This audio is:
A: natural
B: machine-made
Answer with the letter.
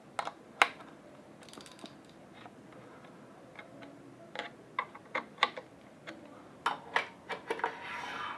A